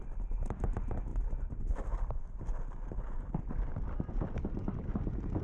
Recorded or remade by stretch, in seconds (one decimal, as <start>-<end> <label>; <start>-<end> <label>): 0.0-5.4 recorded